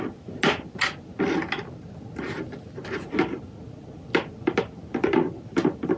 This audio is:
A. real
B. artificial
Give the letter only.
A